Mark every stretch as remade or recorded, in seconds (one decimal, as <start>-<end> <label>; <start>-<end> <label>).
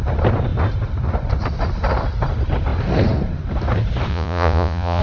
0.0-4.1 recorded; 4.1-5.0 remade